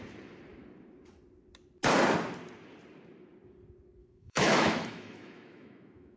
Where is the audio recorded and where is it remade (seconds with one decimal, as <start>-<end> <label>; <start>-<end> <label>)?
0.0-4.0 recorded; 4.0-6.2 remade